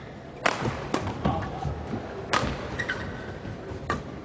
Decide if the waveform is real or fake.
real